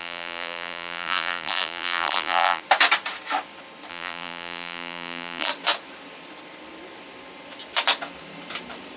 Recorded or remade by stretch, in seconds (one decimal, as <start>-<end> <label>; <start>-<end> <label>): 0.0-2.6 remade; 2.6-3.9 recorded; 3.9-5.5 remade; 5.5-9.0 recorded